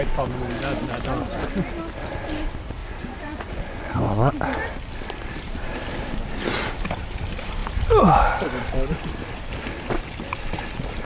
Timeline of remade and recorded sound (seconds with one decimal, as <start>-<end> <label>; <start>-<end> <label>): 0.0-2.8 recorded; 2.8-4.3 remade; 4.3-11.1 recorded